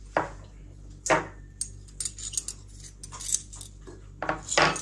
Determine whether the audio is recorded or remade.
recorded